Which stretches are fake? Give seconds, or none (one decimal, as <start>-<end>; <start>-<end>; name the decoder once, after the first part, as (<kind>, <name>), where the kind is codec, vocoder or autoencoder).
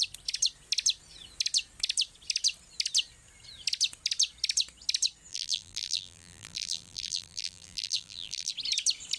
5.3-8.5 (vocoder, BigVGAN v2)